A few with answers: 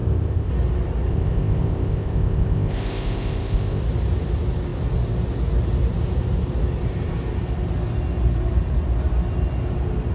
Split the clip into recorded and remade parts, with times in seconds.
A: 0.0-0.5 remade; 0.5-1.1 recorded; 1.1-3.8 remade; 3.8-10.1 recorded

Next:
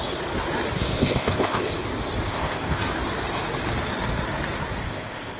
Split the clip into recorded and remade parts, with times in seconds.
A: 0.0-0.9 recorded; 0.9-1.8 remade; 1.8-2.3 recorded; 2.3-2.8 remade; 2.8-4.8 recorded; 4.8-5.4 remade

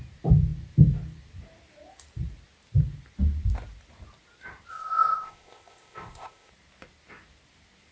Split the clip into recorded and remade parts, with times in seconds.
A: 0.0-4.7 recorded; 4.7-6.5 remade; 6.5-7.9 recorded

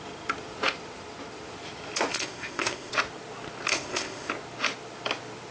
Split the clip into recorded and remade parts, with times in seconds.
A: 0.0-2.1 recorded; 2.1-2.9 remade; 2.9-3.7 recorded; 3.7-4.3 remade; 4.3-5.5 recorded